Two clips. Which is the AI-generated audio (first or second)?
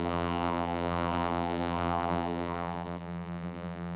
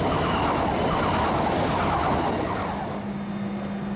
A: first